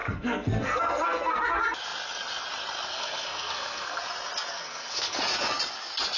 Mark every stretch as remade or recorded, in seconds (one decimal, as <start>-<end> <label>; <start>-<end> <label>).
0.0-1.4 remade; 1.4-2.9 recorded; 2.9-4.0 remade; 4.0-4.5 recorded; 4.5-5.2 remade; 5.2-6.2 recorded